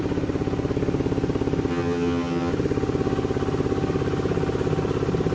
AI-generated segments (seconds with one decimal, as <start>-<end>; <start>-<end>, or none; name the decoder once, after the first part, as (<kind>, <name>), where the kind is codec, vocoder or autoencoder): 1.7-2.5 (vocoder, HiFi-GAN)